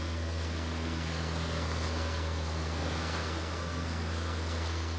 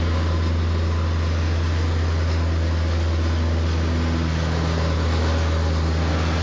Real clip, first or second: second